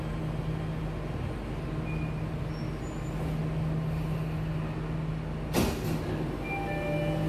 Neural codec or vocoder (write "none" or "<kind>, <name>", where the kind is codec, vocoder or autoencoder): none